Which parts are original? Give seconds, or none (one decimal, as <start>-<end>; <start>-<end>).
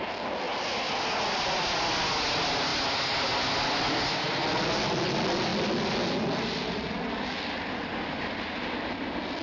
0.0-9.4